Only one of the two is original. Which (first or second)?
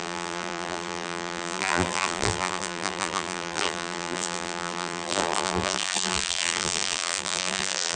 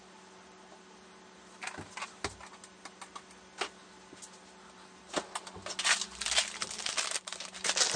second